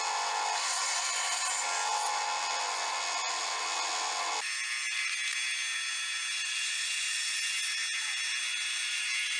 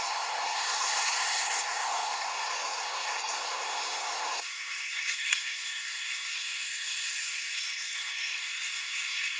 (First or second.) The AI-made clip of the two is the second